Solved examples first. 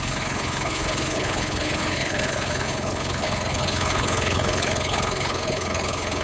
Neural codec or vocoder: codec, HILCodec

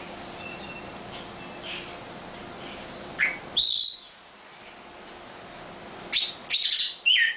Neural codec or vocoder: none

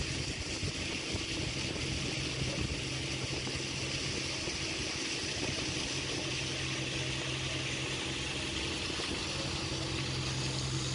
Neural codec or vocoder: none